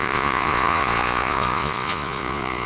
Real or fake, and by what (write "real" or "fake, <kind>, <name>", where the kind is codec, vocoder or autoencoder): fake, vocoder, Vocos